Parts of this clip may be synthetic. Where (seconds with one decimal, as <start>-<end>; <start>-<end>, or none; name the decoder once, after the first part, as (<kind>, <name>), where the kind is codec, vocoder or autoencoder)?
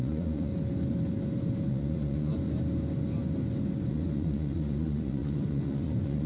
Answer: 0.0-0.5 (vocoder, Vocos); 1.7-2.3; 3.9-6.3